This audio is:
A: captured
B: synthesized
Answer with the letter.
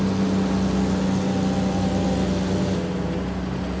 A